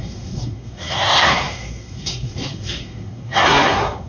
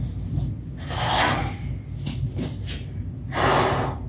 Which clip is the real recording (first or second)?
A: second